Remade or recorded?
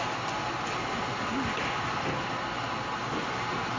recorded